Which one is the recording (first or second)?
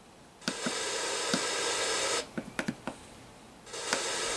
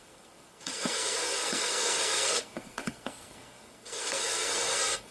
first